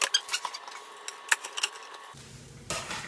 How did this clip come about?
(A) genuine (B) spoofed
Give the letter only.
A